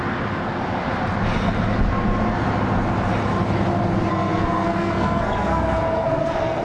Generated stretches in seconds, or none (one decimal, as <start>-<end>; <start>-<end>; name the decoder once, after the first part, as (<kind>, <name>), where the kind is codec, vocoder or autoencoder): 4.1-6.6 (codec, SNAC)